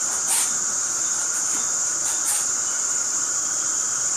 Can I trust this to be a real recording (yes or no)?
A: no